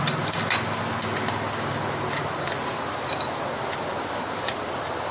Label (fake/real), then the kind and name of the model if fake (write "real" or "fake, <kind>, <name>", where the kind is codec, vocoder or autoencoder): real